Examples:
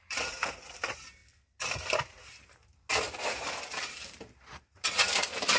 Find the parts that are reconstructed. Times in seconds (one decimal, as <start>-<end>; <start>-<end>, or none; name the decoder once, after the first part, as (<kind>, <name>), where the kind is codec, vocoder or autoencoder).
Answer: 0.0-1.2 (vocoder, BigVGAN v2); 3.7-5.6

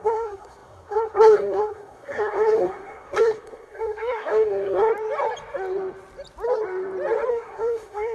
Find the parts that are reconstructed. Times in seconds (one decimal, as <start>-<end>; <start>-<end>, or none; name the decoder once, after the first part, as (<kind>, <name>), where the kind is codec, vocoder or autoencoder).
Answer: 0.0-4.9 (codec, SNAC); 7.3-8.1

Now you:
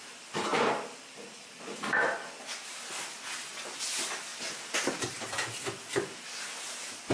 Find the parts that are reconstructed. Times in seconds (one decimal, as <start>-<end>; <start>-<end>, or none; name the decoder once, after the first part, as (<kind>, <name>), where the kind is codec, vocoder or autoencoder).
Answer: none

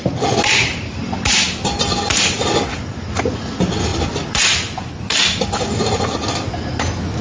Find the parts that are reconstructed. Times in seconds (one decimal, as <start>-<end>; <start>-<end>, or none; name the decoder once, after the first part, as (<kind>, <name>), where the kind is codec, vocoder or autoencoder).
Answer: 3.9-4.9 (vocoder, BigVGAN v2)